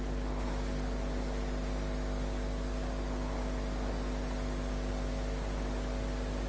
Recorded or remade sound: recorded